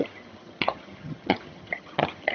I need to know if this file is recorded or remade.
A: remade